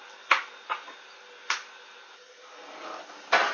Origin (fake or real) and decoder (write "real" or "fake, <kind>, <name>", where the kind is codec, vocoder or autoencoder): real